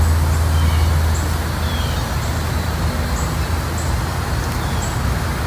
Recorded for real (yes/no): yes